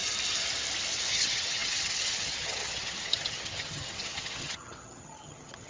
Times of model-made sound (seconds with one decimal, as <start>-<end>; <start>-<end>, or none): 1.1-5.7

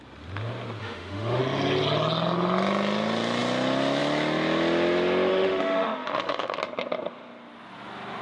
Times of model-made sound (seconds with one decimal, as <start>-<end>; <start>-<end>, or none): 0.8-1.4; 5.3-6.6

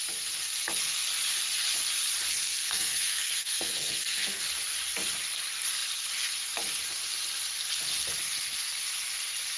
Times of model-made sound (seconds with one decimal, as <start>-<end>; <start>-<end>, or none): 2.3-4.4

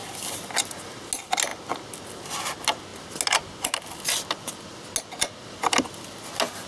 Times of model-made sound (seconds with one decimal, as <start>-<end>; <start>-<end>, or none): none

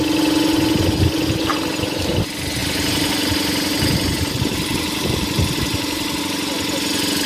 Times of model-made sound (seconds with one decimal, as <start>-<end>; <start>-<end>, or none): 1.5-2.1; 2.6-6.2

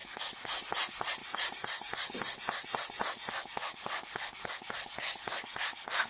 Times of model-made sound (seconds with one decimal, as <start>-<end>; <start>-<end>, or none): none

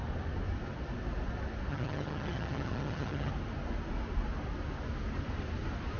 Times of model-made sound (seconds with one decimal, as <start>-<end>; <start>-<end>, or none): 1.7-3.3

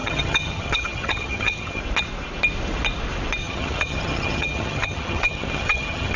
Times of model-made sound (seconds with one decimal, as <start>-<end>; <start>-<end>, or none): 0.0-1.8; 3.4-6.2